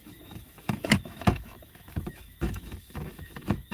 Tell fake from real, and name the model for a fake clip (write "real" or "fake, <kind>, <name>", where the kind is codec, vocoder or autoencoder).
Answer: fake, autoencoder, DAC-VAE